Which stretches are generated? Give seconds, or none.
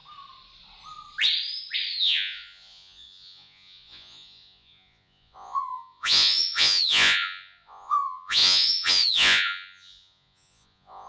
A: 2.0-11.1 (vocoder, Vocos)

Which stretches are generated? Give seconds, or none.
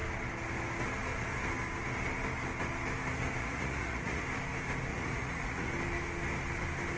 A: 3.4-4.2 (vocoder, Vocos); 4.9-5.7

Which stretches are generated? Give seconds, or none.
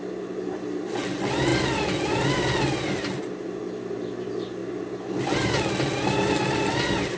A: none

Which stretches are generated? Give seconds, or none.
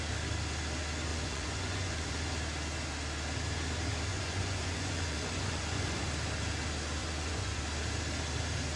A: 1.1-2.2 (vocoder, Vocos); 4.1-6.0; 7.0-7.6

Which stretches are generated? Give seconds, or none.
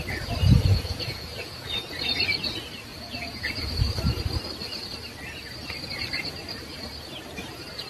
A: 0.4-1.8 (vocoder, Vocos); 2.9-3.8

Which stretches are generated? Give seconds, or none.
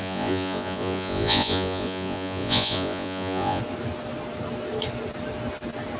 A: 0.0-3.6 (vocoder, Vocos)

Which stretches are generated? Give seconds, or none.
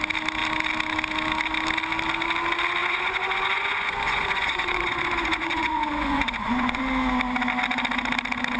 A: 2.8-6.8 (vocoder, Vocos)